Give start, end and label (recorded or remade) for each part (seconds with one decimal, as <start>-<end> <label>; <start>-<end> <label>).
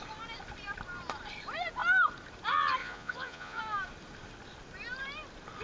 0.0-2.8 recorded; 2.8-3.6 remade; 3.6-5.6 recorded